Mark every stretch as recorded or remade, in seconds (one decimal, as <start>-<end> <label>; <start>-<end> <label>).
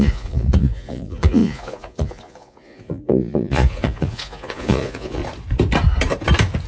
0.0-5.2 remade; 5.2-6.7 recorded